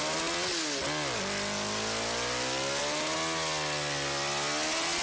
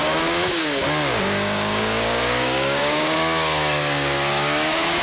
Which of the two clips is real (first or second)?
first